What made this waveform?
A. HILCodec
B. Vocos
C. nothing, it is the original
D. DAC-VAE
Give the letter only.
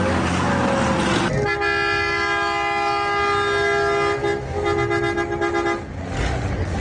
C